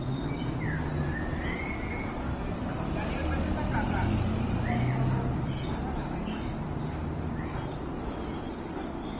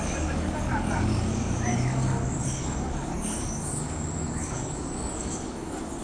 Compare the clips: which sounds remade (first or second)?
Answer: second